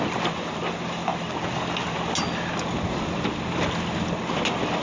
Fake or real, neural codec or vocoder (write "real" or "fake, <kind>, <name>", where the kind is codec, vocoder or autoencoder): real